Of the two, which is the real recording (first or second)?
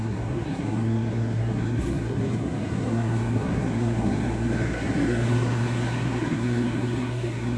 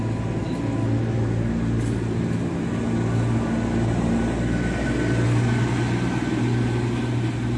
second